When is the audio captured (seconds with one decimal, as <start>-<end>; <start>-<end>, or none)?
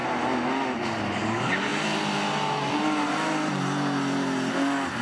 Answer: 0.0-5.0